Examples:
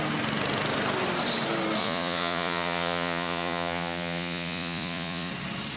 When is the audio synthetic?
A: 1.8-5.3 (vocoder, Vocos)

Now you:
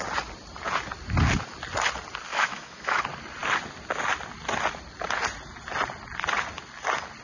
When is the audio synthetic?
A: 2.3-3.0 (autoencoder, DAC-VAE)

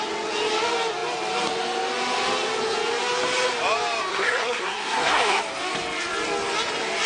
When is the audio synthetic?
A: 4.1-5.4 (codec, SNAC)

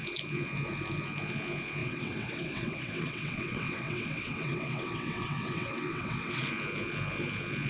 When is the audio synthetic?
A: 1.8-6.4 (vocoder, WaveNeXt)

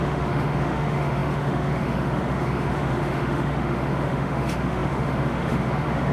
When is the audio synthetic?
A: 0.0-6.1 (autoencoder, DAC-VAE)

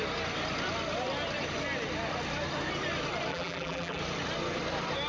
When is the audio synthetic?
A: 3.3-4.0 (vocoder, BigVGAN v2)

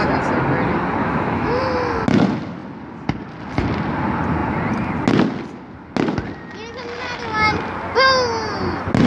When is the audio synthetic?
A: 1.0-1.6 (autoencoder, DAC-VAE)